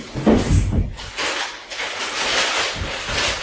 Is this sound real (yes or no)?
yes